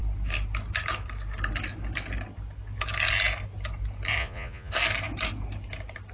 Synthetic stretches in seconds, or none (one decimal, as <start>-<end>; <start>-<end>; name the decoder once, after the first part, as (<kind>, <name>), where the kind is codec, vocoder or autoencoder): 4.2-4.7 (vocoder, Vocos)